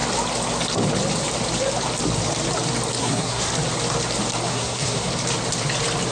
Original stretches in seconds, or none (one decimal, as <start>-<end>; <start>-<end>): 0.0-3.0; 3.5-4.5; 5.1-6.1